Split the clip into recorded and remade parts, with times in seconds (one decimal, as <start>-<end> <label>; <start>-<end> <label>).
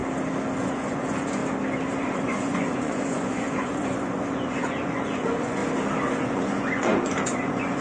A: 0.0-0.6 recorded; 0.6-1.4 remade; 1.4-1.9 recorded; 1.9-5.6 remade; 5.6-6.2 recorded; 6.2-7.8 remade